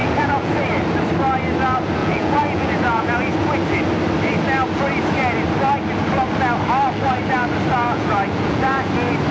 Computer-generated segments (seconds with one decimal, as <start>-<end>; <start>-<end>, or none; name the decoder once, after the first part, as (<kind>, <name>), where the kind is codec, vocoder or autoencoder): 0.0-0.6 (vocoder, Vocos); 2.0-3.1; 7.8-8.9